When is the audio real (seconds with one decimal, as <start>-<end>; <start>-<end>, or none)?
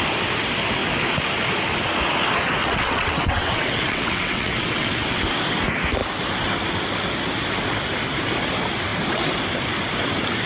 0.0-2.6; 5.2-10.5